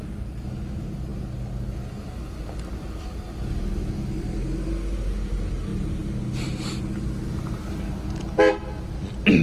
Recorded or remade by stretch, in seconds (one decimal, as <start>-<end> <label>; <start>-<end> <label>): 0.0-9.4 recorded